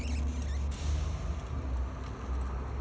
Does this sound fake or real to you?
real